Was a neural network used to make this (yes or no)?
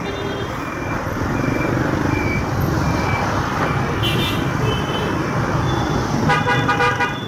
no